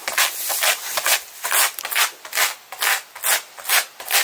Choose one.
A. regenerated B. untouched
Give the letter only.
B